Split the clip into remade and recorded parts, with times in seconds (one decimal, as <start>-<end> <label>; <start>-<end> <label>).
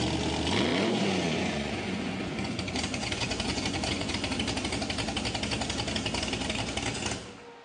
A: 0.0-0.7 recorded; 0.7-4.1 remade; 4.1-7.6 recorded